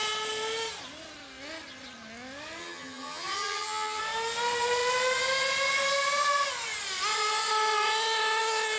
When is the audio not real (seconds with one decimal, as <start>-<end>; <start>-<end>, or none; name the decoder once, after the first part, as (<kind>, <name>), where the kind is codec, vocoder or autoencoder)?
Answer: 2.6-4.0 (vocoder, HiFi-GAN)